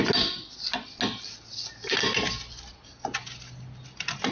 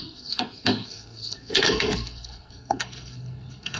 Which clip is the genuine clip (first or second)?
first